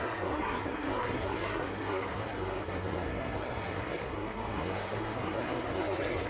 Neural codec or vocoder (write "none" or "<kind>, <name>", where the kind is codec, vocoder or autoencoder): codec, SNAC